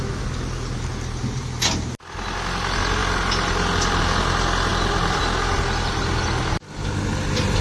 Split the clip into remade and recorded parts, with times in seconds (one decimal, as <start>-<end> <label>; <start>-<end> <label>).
0.0-7.6 recorded